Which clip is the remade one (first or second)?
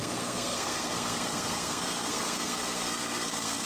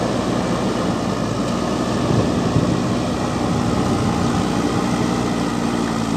first